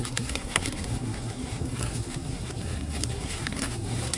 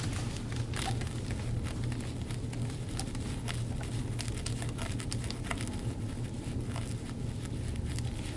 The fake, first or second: first